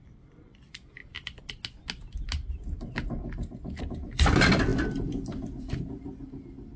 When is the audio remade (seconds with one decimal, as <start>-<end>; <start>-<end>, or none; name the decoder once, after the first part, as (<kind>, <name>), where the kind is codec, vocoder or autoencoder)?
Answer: 0.0-1.0 (vocoder, BigVGAN v2); 3.8-6.8